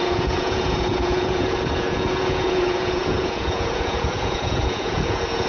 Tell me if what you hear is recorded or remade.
remade